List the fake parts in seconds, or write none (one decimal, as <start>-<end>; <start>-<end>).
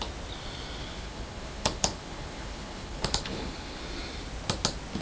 0.8-3.8